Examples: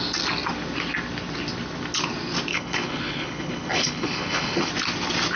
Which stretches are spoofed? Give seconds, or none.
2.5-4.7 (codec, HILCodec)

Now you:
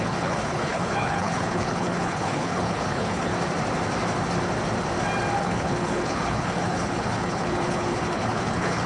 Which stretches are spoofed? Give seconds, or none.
0.0-3.3 (codec, HILCodec); 5.4-8.9

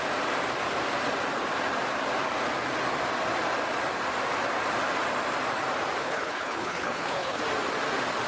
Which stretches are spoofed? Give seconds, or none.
6.0-7.4 (codec, HILCodec)

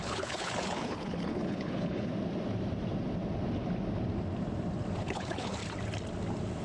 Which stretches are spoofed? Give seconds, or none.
0.0-2.1 (codec, HILCodec); 5.0-5.6

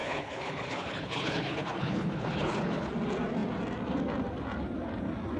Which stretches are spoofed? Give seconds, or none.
0.0-2.9 (codec, HILCodec)

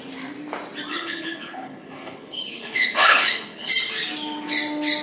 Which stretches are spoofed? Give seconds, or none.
0.9-3.7 (codec, HILCodec)